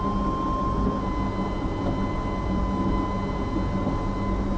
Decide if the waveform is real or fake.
real